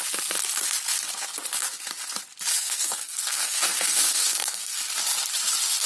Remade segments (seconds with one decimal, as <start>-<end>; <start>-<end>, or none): 2.5-4.8